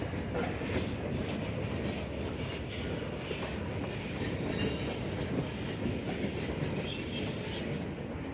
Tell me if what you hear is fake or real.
real